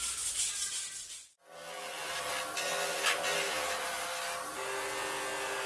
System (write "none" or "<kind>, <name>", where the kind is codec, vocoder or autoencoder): none